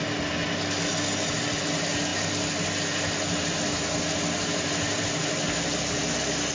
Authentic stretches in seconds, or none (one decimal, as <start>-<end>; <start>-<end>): 0.0-6.5